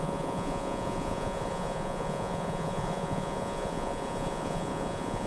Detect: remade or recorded remade